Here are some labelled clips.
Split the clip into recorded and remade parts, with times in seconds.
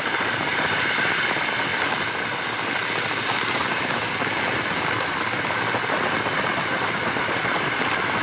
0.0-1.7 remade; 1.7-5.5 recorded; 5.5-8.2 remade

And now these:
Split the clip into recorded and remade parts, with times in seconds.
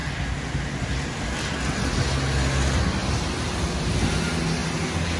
0.0-5.2 recorded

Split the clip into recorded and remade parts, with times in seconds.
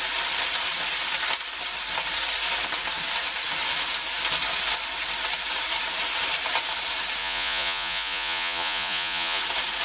0.0-7.2 recorded; 7.2-9.4 remade; 9.4-9.8 recorded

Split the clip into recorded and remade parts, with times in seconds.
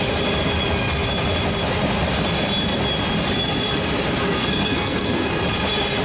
0.0-4.4 recorded; 4.4-5.3 remade; 5.3-6.0 recorded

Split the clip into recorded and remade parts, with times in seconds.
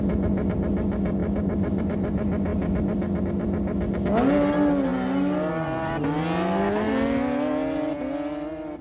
0.0-1.2 recorded; 1.2-1.8 remade; 1.8-8.8 recorded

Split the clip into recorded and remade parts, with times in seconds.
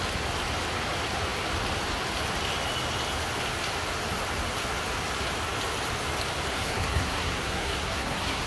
0.0-6.5 recorded; 6.5-8.5 remade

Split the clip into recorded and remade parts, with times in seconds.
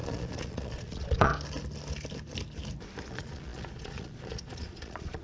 0.0-1.3 remade; 1.3-3.1 recorded; 3.1-5.2 remade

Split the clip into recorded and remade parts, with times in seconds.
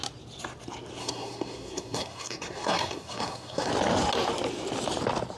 0.0-1.0 recorded; 1.0-3.7 remade; 3.7-5.4 recorded